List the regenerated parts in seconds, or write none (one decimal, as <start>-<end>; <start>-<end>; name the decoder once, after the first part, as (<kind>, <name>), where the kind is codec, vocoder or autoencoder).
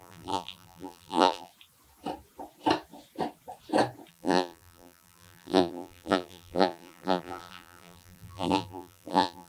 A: 0.0-1.5 (vocoder, BigVGAN v2); 4.1-9.5